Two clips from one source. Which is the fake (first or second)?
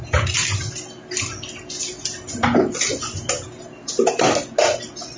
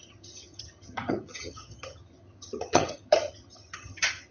second